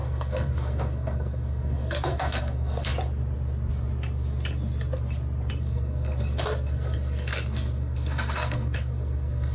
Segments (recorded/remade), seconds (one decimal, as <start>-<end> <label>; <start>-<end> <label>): 0.0-2.9 remade; 2.9-5.6 recorded; 5.6-9.5 remade